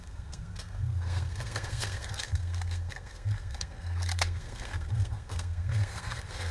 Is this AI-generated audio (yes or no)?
yes